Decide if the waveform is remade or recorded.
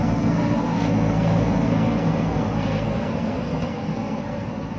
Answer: remade